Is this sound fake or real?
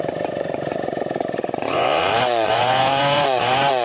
fake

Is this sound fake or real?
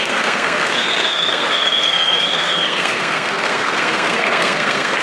fake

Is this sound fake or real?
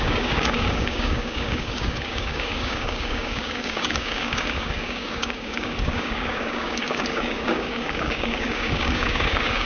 fake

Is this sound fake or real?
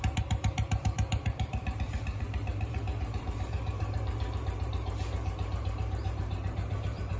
fake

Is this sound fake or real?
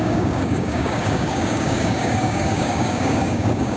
fake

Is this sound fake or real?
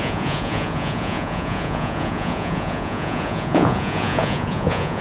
fake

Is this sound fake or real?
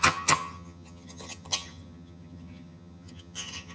fake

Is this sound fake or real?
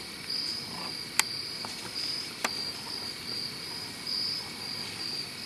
real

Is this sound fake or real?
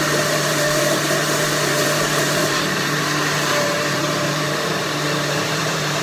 fake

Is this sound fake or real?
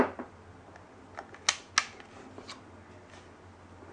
real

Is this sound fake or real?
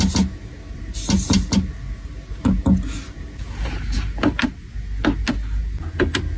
real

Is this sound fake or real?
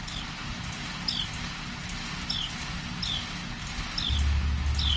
real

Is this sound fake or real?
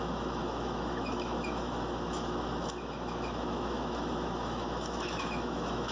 fake